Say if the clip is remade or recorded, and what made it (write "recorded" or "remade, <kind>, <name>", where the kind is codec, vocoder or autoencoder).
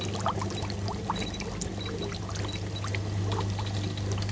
recorded